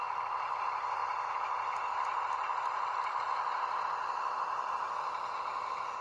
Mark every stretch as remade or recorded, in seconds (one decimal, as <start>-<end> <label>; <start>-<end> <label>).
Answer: 0.0-1.0 recorded; 1.0-3.8 remade; 3.8-6.0 recorded